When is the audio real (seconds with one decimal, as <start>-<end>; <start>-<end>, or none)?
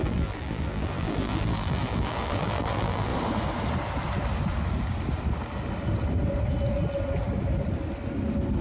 3.1-8.6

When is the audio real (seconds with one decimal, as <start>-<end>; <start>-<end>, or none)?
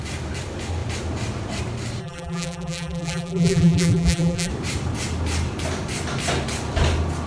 0.0-2.0; 4.5-7.3